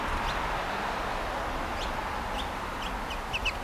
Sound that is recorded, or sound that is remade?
recorded